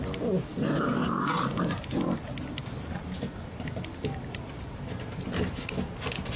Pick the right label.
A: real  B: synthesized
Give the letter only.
A